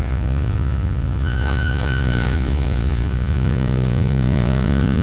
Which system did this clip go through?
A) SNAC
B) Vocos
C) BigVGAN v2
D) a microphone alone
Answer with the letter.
B